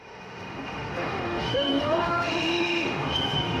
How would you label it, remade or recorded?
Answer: remade